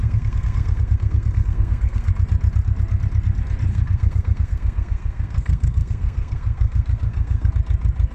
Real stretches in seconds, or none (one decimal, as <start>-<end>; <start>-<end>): 2.1-3.7; 7.5-8.1